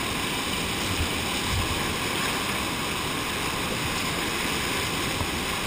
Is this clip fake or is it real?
real